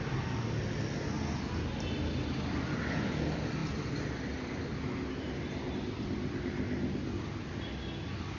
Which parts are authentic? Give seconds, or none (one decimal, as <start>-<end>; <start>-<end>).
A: 0.0-8.4